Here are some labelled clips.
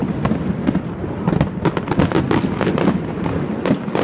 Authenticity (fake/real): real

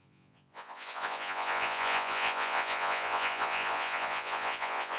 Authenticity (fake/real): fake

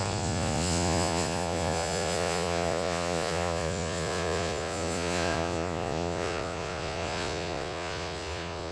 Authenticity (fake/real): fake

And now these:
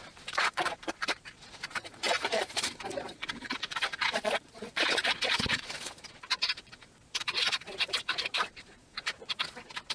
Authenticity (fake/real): fake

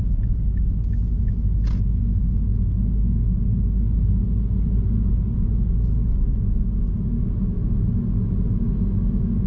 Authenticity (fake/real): real